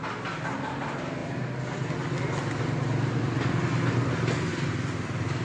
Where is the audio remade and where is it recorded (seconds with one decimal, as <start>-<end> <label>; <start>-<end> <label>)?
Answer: 0.0-5.4 recorded